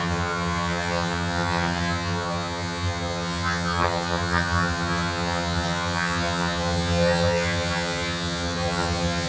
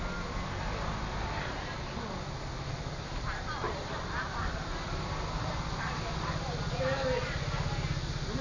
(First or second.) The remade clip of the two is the first